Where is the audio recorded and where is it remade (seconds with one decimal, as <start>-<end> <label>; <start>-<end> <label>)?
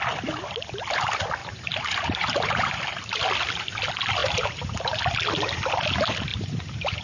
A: 0.0-1.4 recorded; 1.4-3.2 remade; 3.2-4.2 recorded; 4.2-5.0 remade; 5.0-6.3 recorded; 6.3-7.0 remade